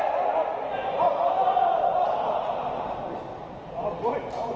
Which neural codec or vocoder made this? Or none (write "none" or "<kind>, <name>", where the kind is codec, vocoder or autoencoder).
vocoder, BigVGAN v2